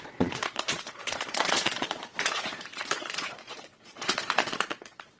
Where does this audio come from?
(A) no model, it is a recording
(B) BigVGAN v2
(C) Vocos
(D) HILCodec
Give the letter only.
C